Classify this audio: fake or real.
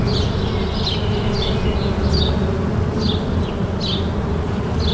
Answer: real